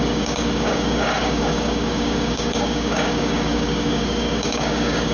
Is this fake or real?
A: fake